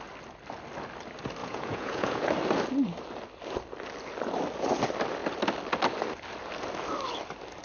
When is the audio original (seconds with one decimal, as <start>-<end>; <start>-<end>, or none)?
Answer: 0.0-1.4; 2.3-7.6